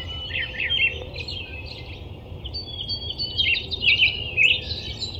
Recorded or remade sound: recorded